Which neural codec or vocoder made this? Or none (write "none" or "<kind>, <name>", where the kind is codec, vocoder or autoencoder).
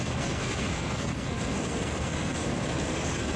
codec, SNAC